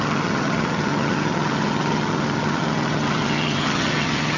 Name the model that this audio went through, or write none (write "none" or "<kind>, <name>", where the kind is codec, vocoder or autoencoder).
vocoder, HiFi-GAN